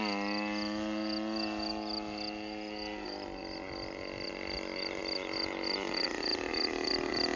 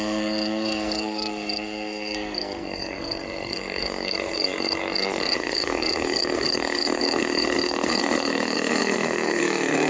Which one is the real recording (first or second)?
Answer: first